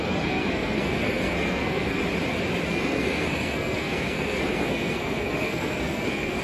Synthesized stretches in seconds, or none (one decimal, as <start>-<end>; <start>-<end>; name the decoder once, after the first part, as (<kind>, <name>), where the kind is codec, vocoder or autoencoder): 0.0-2.0 (codec, SNAC); 2.7-6.4